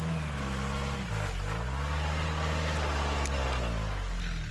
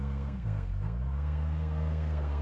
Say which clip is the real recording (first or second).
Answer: first